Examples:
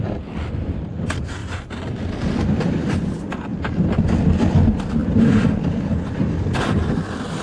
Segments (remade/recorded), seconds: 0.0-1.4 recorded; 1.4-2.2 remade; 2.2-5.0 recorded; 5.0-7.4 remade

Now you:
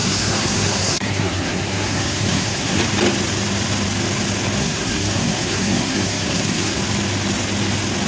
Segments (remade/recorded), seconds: 0.0-2.8 remade; 2.8-4.6 recorded; 4.6-6.8 remade; 6.8-8.1 recorded

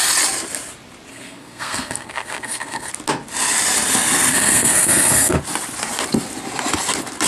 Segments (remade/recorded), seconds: 0.0-1.1 recorded; 1.1-2.9 remade; 2.9-4.3 recorded; 4.3-5.4 remade; 5.4-7.3 recorded

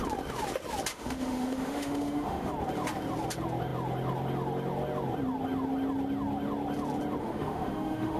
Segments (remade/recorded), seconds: 0.0-0.9 recorded; 0.9-2.5 remade; 2.5-7.2 recorded; 7.2-8.2 remade

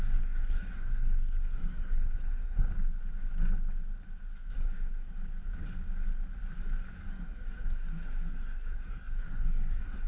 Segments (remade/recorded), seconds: 0.0-2.7 remade; 2.7-4.5 recorded; 4.5-5.1 remade; 5.1-7.1 recorded; 7.1-10.1 remade